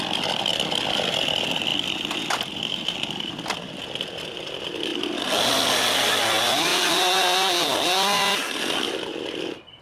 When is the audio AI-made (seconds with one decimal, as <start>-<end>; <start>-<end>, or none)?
none